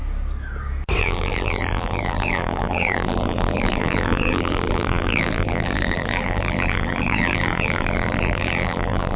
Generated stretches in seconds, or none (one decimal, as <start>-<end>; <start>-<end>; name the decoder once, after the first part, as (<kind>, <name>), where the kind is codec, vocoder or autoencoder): 1.0-9.2 (vocoder, BigVGAN v2)